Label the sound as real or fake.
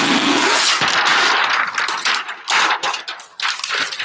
real